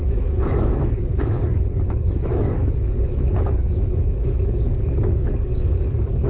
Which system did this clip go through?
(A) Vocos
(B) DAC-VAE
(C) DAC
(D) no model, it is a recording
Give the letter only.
C